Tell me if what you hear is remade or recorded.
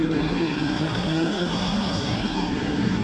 remade